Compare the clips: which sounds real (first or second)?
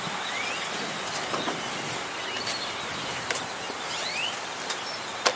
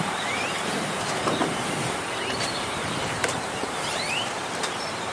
first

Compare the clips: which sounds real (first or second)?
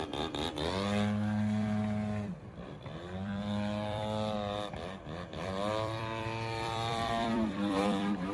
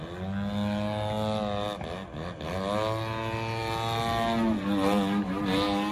second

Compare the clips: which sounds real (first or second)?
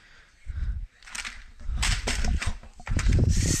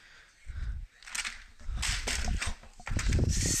second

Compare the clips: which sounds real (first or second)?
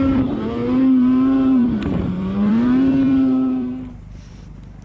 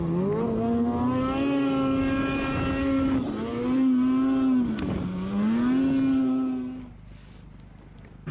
second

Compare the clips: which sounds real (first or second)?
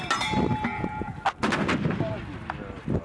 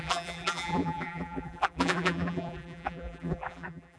first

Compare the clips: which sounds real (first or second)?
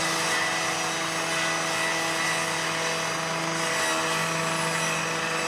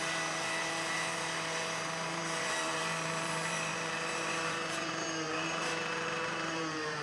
first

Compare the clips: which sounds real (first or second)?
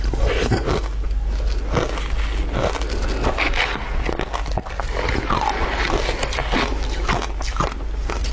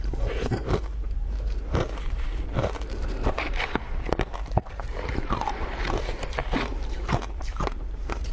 first